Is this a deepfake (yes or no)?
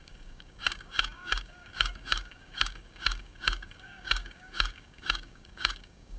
yes